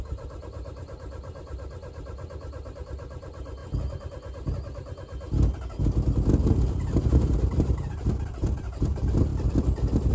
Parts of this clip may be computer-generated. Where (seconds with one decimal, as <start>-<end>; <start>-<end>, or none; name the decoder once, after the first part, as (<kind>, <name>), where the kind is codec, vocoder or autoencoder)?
0.0-3.6 (vocoder, BigVGAN v2); 6.7-9.3

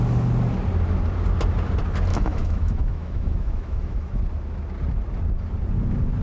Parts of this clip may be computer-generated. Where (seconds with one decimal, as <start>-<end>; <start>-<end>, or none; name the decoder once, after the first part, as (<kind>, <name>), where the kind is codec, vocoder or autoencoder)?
2.1-4.2 (autoencoder, DAC-VAE)

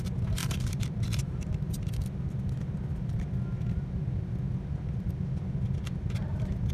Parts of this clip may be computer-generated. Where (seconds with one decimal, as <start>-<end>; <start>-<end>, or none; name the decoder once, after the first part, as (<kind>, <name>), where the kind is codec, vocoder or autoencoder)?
0.4-1.9 (vocoder, BigVGAN v2)